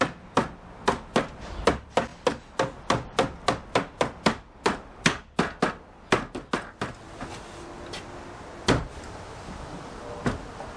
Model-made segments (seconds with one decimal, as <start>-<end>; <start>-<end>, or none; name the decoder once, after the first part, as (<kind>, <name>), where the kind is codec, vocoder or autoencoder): none

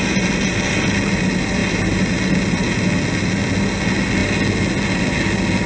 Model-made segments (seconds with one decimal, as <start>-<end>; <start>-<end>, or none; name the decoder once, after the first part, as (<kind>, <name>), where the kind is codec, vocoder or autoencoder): none

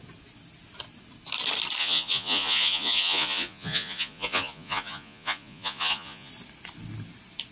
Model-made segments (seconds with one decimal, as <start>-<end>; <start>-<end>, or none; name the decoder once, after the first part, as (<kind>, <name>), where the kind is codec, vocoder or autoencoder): 1.8-6.3 (vocoder, Vocos)

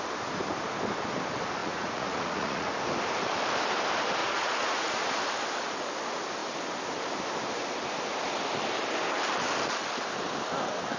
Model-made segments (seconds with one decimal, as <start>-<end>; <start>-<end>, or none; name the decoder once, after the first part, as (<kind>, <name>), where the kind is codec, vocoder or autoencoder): 1.6-2.7 (vocoder, Vocos); 4.2-5.2

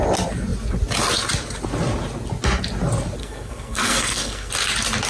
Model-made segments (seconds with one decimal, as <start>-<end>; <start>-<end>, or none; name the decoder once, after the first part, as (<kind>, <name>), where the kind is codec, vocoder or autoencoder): 3.2-4.5 (codec, SNAC)

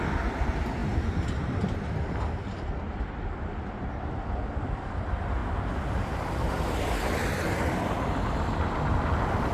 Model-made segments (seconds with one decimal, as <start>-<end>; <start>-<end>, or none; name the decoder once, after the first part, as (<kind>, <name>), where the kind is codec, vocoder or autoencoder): none

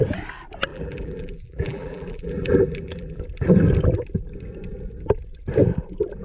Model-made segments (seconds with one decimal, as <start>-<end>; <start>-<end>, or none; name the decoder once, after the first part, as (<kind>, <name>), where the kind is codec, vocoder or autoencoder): 0.7-3.2 (vocoder, BigVGAN v2)

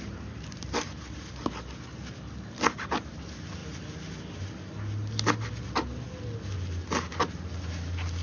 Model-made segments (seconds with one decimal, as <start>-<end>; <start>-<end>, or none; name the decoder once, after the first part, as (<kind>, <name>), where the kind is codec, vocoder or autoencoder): 0.0-1.4 (vocoder, BigVGAN v2); 3.1-3.6; 7.3-8.2